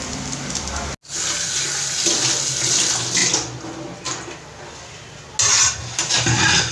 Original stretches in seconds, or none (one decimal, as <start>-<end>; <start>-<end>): 0.0-6.7

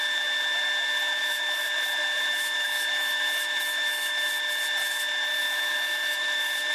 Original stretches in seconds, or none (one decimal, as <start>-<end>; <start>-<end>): 0.0-1.2; 4.3-5.4

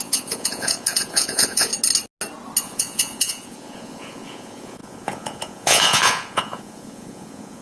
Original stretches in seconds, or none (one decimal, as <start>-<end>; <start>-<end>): 1.7-2.6